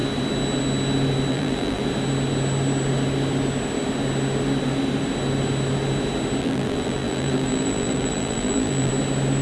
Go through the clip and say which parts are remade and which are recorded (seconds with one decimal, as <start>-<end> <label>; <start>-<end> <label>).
0.0-1.3 recorded; 1.3-1.8 remade; 1.8-6.4 recorded; 6.4-8.9 remade; 8.9-9.4 recorded